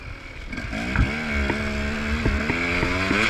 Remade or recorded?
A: recorded